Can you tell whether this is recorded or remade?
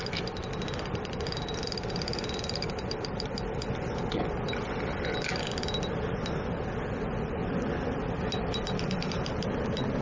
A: recorded